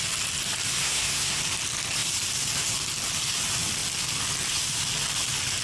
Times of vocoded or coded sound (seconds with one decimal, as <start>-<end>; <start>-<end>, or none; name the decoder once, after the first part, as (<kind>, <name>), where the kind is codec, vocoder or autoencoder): 0.8-1.4 (codec, SNAC)